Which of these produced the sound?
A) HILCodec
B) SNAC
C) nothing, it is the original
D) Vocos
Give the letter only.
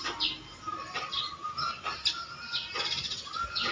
C